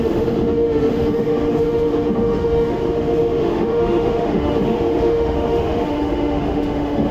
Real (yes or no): no